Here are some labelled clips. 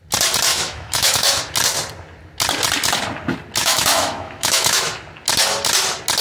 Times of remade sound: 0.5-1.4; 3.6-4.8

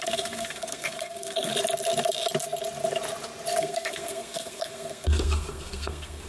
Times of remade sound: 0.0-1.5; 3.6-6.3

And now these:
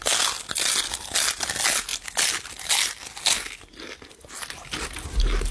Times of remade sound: none